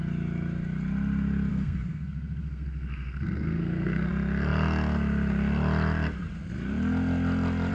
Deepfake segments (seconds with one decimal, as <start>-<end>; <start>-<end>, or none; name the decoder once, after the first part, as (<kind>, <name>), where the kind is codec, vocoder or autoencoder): 1.5-4.1 (codec, SNAC)